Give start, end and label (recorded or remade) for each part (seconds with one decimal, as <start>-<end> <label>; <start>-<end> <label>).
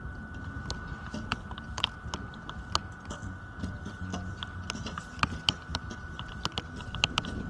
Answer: 0.0-7.5 recorded